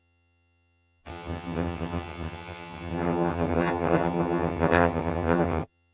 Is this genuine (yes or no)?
no